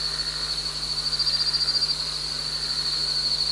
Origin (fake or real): real